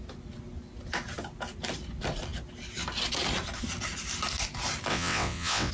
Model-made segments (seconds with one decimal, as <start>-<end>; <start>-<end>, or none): 4.9-5.7